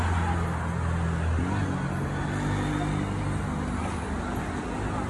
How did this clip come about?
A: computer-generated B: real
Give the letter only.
B